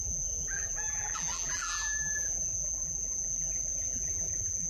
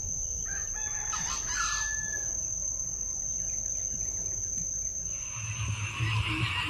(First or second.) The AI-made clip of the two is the first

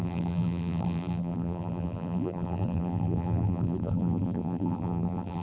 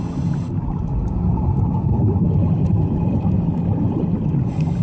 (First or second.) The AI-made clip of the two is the first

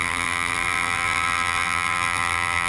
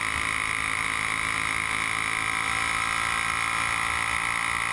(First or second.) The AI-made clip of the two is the first